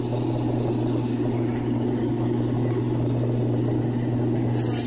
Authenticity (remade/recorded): recorded